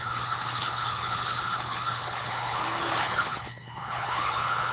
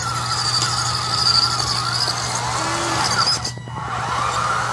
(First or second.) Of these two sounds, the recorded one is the second